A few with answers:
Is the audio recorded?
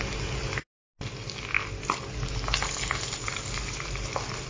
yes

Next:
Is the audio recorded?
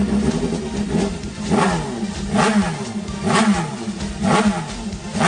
yes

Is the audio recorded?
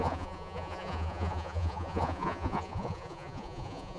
no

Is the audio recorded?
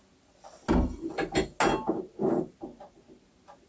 yes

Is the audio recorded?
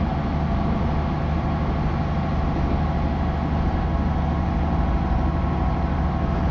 yes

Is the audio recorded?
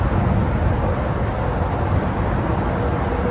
yes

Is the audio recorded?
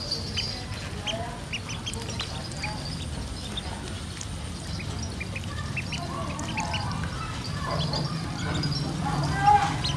yes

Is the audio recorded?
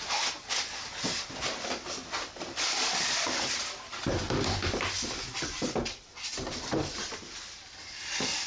yes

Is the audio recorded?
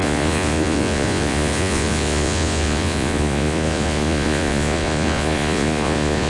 no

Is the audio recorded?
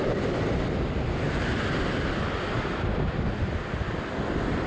yes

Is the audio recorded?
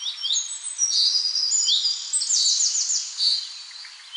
yes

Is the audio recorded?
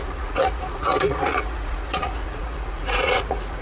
no